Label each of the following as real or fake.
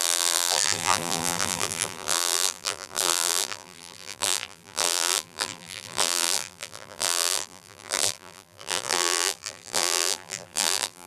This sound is fake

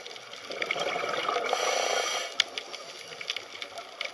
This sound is real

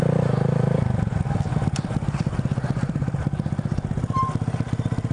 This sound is fake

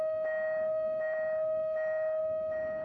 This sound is real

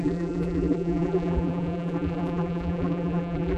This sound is fake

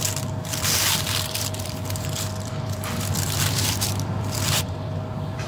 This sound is fake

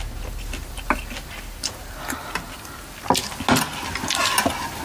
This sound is real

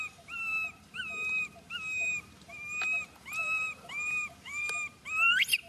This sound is fake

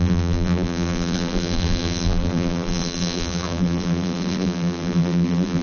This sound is fake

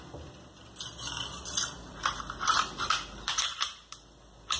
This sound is fake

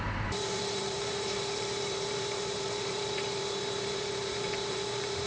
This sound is fake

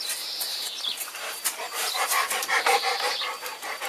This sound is fake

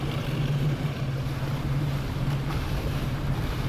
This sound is fake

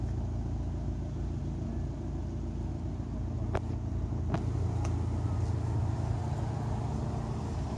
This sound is real